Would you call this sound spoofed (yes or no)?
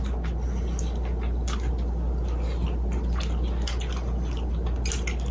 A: no